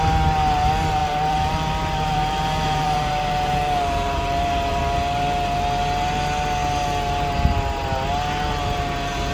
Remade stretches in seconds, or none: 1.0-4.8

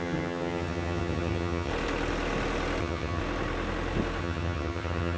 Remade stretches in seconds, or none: 0.0-1.7; 2.8-3.2; 4.2-5.2

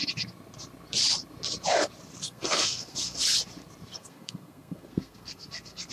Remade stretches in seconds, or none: 2.2-3.2; 3.9-5.9

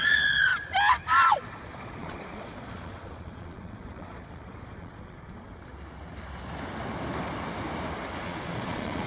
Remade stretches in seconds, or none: 0.0-0.5; 1.3-5.7; 8.2-9.1

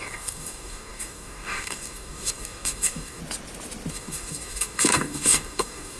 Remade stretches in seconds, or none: 0.0-3.2; 3.9-6.0

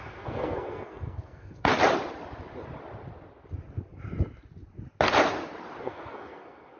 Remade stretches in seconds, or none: 0.0-1.7; 5.8-6.8

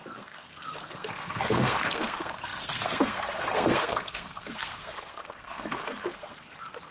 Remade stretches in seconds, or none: 0.0-6.9